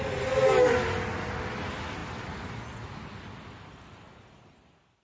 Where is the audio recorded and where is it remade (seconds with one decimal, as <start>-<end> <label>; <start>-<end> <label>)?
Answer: 0.0-5.0 recorded